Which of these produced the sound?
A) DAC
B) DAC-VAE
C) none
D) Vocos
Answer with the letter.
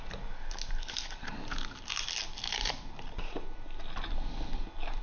C